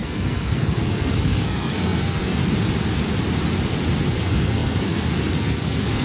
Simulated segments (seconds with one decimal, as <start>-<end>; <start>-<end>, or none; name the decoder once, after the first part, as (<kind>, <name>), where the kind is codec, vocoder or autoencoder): 0.0-2.4 (codec, SNAC); 4.0-6.0